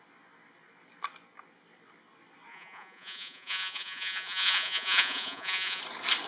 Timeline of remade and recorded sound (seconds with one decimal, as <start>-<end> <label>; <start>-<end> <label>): 0.0-2.5 recorded; 2.5-5.8 remade; 5.8-6.3 recorded

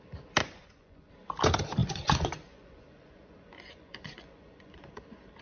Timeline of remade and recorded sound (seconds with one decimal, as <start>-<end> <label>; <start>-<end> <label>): 0.0-0.4 recorded; 0.4-1.1 remade; 1.1-1.8 recorded; 1.8-5.0 remade; 5.0-5.4 recorded

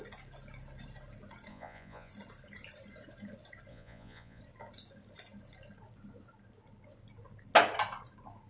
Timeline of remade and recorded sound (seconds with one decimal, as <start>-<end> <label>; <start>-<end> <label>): 0.0-1.5 recorded; 1.5-2.1 remade; 2.1-3.7 recorded; 3.7-4.4 remade; 4.4-8.5 recorded

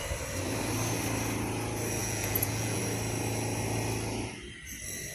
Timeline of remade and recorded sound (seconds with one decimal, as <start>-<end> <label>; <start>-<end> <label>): 0.0-2.0 recorded; 2.0-2.8 remade; 2.8-5.1 recorded

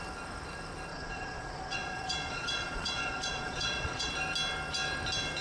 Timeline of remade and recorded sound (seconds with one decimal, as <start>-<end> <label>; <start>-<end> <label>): 0.0-0.9 recorded; 0.9-4.1 remade; 4.1-5.4 recorded

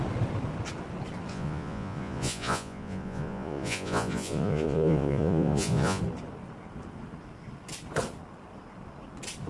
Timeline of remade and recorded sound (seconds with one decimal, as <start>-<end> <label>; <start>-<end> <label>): 0.0-1.3 recorded; 1.3-6.0 remade; 6.0-9.5 recorded

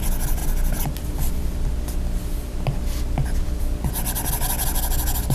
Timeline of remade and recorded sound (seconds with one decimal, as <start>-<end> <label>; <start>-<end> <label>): 0.0-5.3 recorded